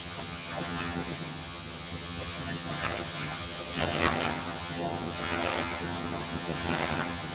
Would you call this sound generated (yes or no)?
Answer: yes